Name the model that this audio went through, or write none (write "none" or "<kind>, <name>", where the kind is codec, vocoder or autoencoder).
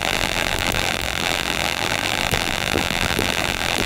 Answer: vocoder, BigVGAN v2